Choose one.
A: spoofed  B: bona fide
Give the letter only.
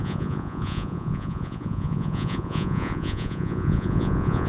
A